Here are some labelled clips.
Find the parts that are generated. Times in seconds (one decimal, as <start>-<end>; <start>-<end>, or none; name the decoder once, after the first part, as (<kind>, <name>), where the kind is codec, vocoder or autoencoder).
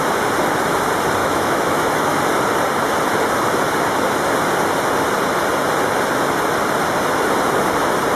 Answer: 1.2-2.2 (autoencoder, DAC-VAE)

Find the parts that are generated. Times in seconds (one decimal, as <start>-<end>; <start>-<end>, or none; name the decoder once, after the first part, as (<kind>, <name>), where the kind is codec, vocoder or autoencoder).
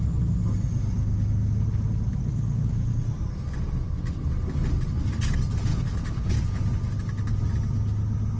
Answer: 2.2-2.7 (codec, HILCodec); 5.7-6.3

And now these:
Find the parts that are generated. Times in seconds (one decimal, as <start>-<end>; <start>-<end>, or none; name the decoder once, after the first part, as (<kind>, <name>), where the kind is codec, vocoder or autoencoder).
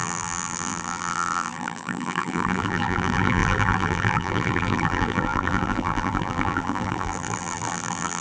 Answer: 0.0-8.2 (vocoder, BigVGAN v2)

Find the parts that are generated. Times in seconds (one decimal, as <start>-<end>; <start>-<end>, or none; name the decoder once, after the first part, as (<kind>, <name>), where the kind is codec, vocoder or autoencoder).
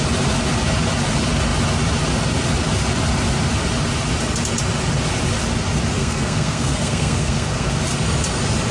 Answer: 6.0-7.7 (codec, SNAC)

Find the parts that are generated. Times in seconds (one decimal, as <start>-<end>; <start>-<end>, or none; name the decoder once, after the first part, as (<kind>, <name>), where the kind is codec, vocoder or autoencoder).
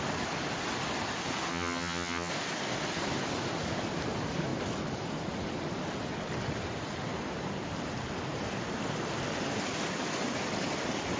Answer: 1.5-2.3 (vocoder, HiFi-GAN)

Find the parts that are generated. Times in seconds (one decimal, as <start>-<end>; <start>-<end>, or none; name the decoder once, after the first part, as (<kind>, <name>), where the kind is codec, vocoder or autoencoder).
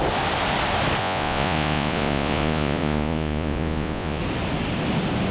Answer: 1.0-4.2 (vocoder, Vocos)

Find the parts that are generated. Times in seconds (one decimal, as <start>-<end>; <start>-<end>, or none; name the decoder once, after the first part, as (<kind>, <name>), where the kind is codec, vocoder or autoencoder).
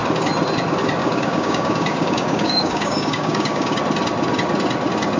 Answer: 1.0-3.8 (codec, DAC)